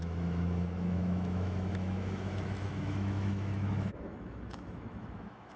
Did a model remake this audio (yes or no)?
yes